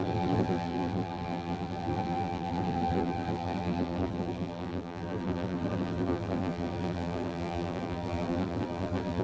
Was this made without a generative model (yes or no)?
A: no